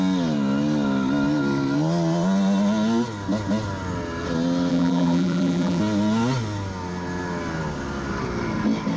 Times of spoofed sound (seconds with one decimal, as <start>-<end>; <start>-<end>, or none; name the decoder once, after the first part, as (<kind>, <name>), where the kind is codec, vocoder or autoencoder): 4.7-5.8 (vocoder, BigVGAN v2)